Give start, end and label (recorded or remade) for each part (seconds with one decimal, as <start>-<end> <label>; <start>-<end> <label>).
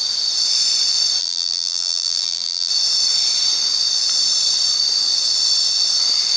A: 0.0-1.2 recorded; 1.2-2.7 remade; 2.7-6.4 recorded